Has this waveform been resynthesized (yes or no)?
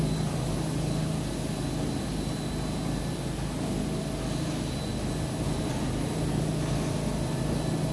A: no